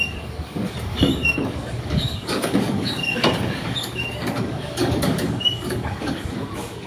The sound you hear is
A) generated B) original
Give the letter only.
A